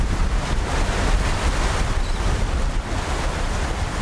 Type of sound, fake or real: fake